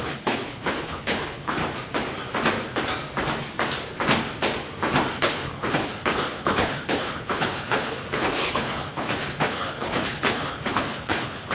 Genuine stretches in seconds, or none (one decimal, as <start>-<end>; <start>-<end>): 1.6-5.2